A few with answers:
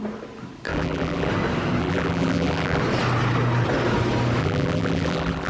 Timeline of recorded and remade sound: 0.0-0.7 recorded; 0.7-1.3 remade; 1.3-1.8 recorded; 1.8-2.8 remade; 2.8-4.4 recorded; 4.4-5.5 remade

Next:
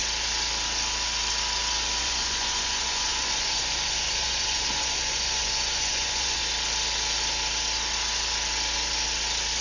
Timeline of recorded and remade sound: 0.0-2.0 recorded; 2.0-6.4 remade; 6.4-9.6 recorded

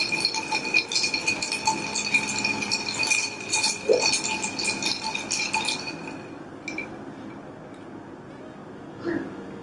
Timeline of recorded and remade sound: 0.0-9.6 recorded

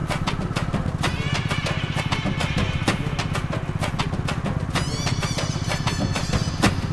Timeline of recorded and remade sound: 0.0-6.9 recorded

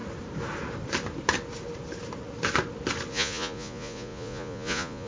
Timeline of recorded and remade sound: 0.0-3.1 recorded; 3.1-5.1 remade

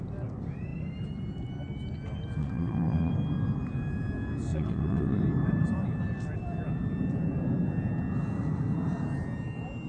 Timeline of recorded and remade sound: 0.0-2.4 recorded; 2.4-3.1 remade; 3.1-4.5 recorded; 4.5-5.2 remade; 5.2-9.9 recorded

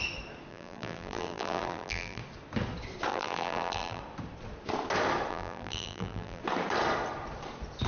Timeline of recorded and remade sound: 0.0-0.5 recorded; 0.5-2.2 remade; 2.2-3.1 recorded; 3.1-4.0 remade; 4.0-5.3 recorded; 5.3-6.4 remade; 6.4-7.9 recorded